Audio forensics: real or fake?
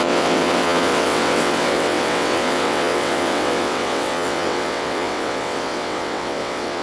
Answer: fake